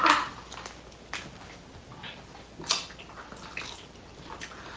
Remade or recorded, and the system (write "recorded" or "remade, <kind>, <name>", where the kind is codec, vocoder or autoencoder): recorded